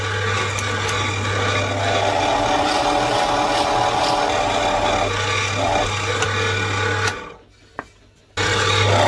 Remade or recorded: recorded